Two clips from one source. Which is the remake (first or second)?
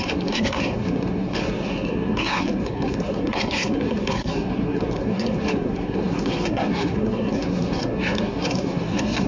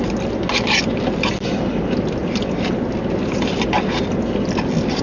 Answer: first